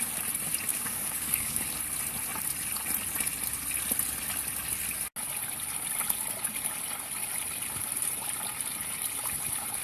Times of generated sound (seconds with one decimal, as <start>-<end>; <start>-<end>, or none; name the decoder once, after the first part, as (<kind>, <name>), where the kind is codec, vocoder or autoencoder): 0.7-1.6 (codec, DAC)